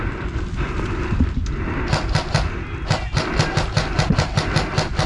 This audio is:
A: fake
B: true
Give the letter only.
B